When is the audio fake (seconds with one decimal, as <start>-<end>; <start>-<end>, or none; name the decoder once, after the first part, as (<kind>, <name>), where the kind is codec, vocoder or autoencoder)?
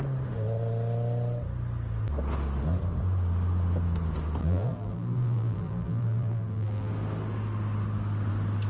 4.4-6.9 (vocoder, BigVGAN v2)